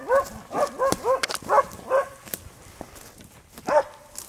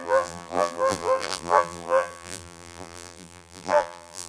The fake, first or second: second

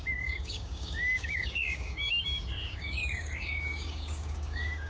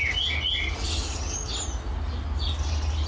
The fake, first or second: first